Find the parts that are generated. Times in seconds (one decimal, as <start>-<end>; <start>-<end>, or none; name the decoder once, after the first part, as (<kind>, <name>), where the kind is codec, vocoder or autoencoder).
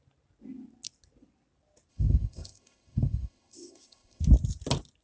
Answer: 1.9-4.2 (codec, ZipCodec)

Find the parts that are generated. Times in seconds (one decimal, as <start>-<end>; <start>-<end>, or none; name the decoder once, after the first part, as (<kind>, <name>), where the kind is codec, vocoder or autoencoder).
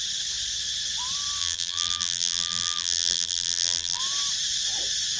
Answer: 1.4-4.0 (vocoder, BigVGAN v2)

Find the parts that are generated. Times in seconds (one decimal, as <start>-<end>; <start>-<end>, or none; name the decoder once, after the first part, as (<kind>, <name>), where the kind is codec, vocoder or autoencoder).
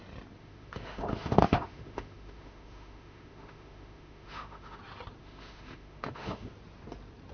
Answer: 0.4-4.8 (autoencoder, DAC-VAE); 5.2-6.5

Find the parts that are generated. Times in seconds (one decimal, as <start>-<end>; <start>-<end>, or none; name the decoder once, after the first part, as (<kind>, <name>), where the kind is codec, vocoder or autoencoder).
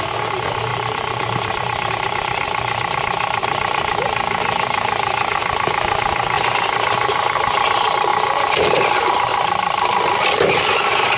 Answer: 0.7-1.9 (vocoder, BigVGAN v2)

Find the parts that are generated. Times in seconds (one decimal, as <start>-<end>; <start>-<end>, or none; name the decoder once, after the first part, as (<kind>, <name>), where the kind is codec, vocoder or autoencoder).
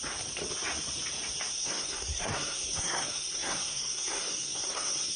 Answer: 1.5-5.2 (codec, SNAC)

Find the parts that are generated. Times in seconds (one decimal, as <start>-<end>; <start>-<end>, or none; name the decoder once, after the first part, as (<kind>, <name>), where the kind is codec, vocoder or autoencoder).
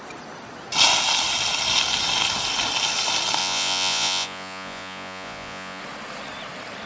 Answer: 3.4-5.8 (vocoder, Vocos)